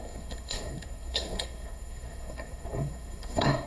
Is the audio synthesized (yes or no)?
yes